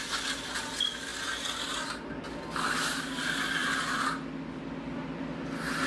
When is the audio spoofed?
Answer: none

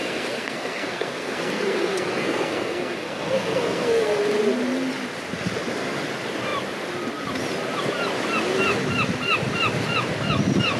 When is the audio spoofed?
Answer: 0.0-4.2 (codec, SNAC)

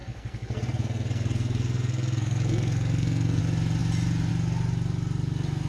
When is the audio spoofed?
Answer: 0.0-3.4 (codec, SNAC)

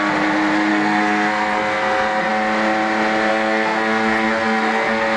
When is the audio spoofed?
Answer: 0.7-2.3 (codec, SNAC); 3.3-5.2

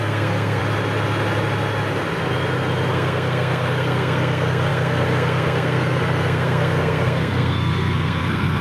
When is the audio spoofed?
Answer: 0.0-0.6 (codec, SNAC); 2.9-8.6

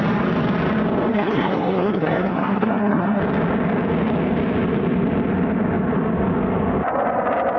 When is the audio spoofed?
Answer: 1.1-3.2 (codec, SNAC)

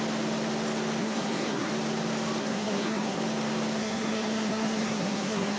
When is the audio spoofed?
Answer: 1.0-1.7 (codec, SNAC); 2.4-3.2; 3.8-5.6